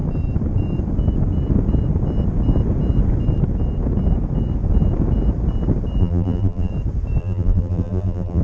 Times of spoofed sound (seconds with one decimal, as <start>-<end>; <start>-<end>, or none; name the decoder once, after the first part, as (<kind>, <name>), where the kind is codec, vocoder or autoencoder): 6.0-6.7 (vocoder, BigVGAN v2); 7.2-8.4